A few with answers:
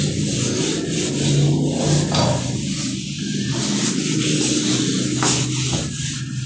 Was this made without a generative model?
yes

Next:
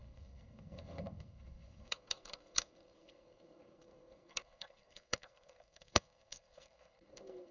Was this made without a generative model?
no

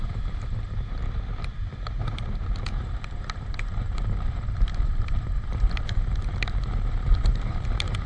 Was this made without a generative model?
no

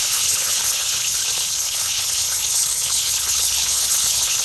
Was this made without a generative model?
no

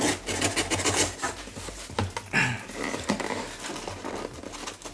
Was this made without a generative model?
yes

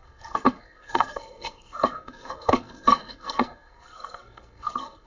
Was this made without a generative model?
no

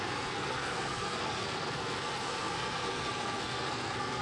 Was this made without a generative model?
no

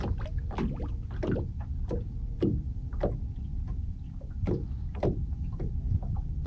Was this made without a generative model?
yes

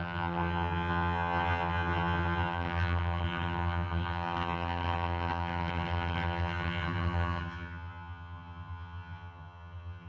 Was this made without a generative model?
no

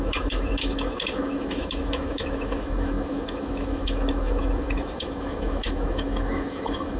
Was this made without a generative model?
no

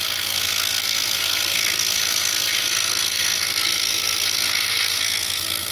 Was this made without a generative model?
no